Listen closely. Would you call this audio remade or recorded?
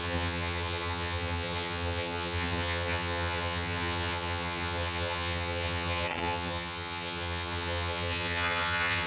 remade